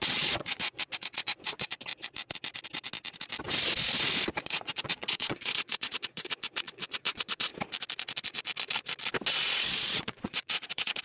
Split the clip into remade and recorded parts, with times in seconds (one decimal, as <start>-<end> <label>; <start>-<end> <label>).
0.0-1.9 remade; 1.9-4.4 recorded; 4.4-7.5 remade; 7.5-9.7 recorded; 9.7-11.0 remade